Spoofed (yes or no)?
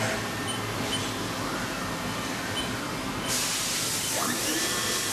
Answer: no